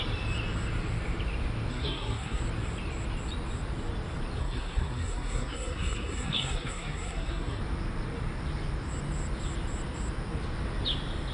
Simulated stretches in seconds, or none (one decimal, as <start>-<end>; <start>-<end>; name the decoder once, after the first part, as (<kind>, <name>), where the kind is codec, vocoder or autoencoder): 1.7-2.4 (codec, SNAC); 4.4-7.6